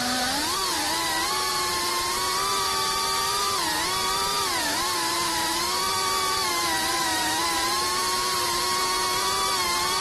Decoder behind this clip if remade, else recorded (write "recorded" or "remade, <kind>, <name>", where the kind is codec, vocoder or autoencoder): recorded